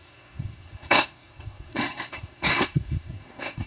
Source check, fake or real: fake